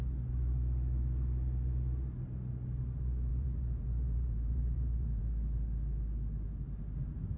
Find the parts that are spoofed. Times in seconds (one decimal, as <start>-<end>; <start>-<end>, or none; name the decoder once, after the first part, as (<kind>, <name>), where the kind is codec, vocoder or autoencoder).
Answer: 3.3-5.2 (vocoder, BigVGAN v2)